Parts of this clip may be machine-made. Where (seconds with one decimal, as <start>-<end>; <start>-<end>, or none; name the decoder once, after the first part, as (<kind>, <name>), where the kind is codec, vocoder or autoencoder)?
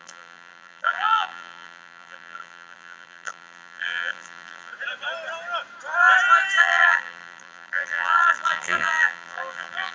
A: 0.0-4.7 (vocoder, BigVGAN v2); 6.6-9.9